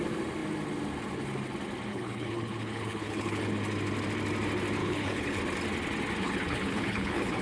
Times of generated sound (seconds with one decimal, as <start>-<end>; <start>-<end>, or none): 1.9-3.5; 4.8-5.4; 6.2-7.4